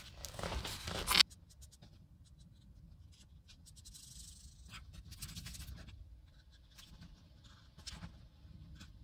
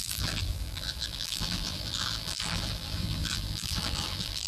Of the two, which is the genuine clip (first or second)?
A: first